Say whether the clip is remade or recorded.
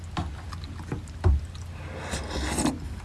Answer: recorded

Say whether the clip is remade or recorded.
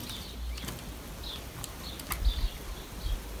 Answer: recorded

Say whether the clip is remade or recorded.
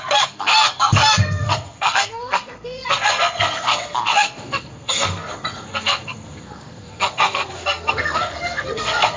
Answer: remade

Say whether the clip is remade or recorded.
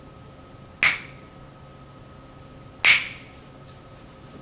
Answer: recorded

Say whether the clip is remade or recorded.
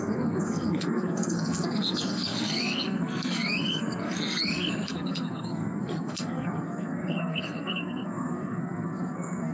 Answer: remade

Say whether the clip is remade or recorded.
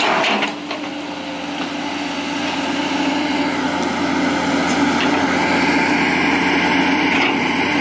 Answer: recorded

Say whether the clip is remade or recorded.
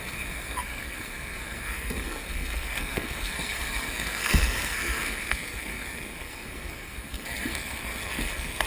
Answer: remade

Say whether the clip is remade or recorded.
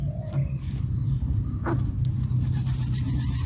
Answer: recorded